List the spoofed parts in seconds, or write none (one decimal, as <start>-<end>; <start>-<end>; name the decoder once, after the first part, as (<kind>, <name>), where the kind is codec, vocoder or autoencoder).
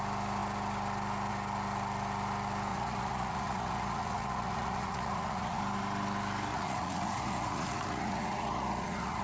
2.7-5.6 (vocoder, Vocos); 6.5-9.2